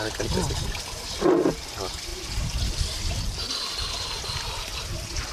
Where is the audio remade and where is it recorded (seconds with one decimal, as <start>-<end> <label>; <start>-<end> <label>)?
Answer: 0.0-5.3 recorded